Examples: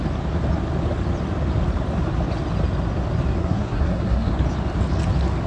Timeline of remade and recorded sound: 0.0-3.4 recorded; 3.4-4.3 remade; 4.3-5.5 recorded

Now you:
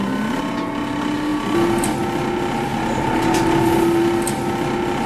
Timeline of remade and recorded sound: 0.0-5.1 recorded

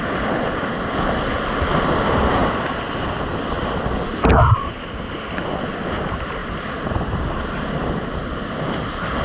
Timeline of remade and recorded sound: 0.0-9.2 recorded

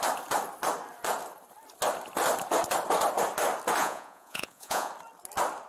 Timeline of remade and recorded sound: 0.0-3.8 recorded; 3.8-4.9 remade; 4.9-5.7 recorded

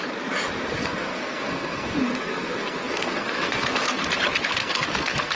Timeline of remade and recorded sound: 0.0-0.8 recorded; 0.8-4.0 remade; 4.0-4.6 recorded; 4.6-5.4 remade